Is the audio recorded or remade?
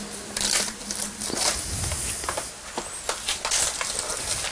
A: recorded